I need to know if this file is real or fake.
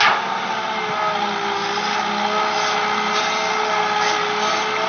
real